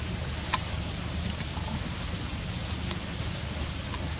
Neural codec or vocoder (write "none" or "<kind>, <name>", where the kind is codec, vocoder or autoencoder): none